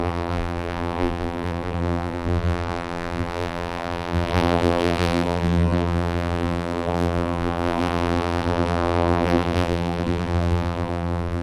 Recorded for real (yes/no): no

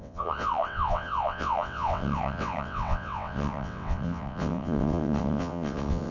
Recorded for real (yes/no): no